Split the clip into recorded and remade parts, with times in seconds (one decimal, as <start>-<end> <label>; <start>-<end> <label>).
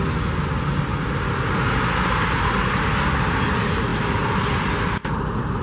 0.0-5.6 recorded